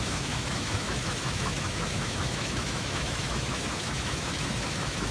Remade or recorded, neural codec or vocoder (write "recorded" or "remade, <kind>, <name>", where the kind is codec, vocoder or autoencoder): remade, autoencoder, DAC-VAE